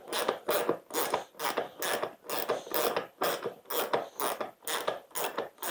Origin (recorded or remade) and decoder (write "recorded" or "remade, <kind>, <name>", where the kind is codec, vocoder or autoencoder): recorded